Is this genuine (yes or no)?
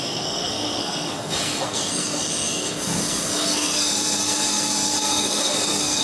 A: no